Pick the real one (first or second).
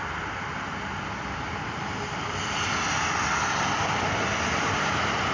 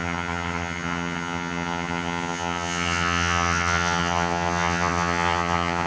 first